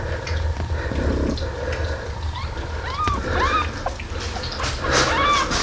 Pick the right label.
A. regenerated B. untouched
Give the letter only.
B